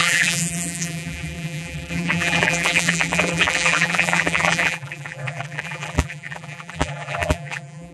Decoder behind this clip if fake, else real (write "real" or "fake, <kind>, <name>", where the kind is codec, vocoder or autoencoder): fake, vocoder, BigVGAN v2